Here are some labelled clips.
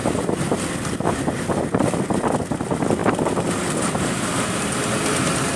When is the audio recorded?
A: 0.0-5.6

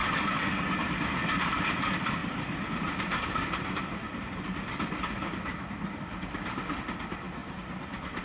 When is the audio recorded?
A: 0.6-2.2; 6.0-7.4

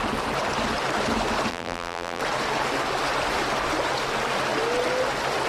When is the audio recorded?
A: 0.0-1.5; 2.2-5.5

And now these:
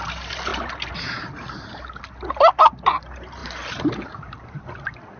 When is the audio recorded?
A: 0.0-3.4; 4.6-5.2